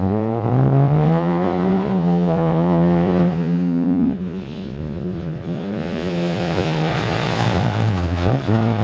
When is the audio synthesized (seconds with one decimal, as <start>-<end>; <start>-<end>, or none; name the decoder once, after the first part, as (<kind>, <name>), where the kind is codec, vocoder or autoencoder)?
0.0-8.8 (vocoder, Vocos)